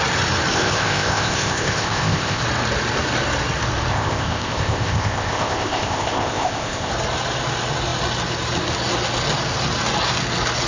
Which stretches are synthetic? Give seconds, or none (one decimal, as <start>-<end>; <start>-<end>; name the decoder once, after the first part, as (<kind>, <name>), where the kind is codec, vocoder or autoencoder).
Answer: 0.5-2.4 (codec, ZipCodec); 3.9-6.9